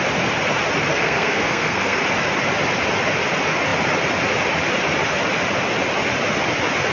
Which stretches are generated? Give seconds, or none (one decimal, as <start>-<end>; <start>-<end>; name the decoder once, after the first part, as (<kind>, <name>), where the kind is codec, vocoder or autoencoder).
0.9-2.0 (codec, SNAC)